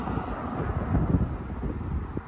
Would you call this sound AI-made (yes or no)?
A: no